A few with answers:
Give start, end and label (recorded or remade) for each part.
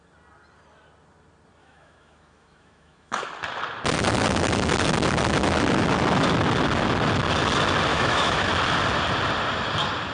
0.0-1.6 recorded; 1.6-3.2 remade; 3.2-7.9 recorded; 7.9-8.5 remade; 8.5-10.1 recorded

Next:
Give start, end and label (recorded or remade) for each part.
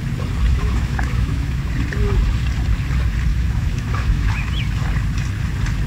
0.0-0.5 recorded; 0.5-1.6 remade; 1.6-3.3 recorded; 3.3-4.6 remade; 4.6-5.9 recorded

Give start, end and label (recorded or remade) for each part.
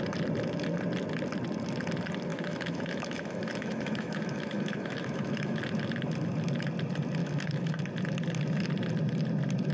0.0-2.3 recorded; 2.3-5.6 remade; 5.6-7.2 recorded; 7.2-7.8 remade; 7.8-9.7 recorded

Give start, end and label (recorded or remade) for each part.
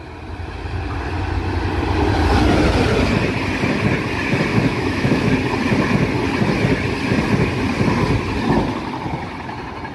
0.0-4.5 recorded; 4.5-5.3 remade; 5.3-9.9 recorded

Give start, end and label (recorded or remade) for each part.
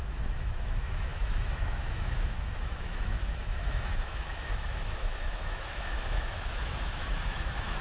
0.0-7.8 remade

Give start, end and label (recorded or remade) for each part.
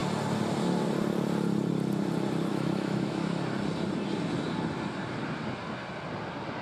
0.0-2.5 recorded; 2.5-3.4 remade; 3.4-6.6 recorded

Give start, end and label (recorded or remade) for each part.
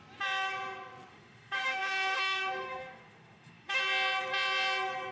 0.0-1.1 recorded; 1.1-3.8 remade; 3.8-5.1 recorded